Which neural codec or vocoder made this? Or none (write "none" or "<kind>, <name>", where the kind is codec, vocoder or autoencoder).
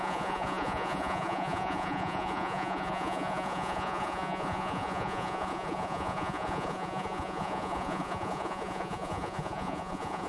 vocoder, Vocos